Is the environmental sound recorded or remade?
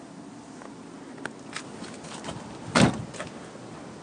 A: recorded